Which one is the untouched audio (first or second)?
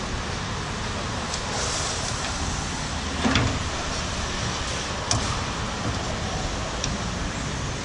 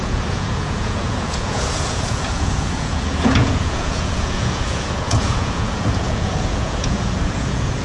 first